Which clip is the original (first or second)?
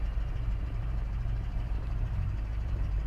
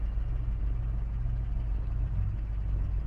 second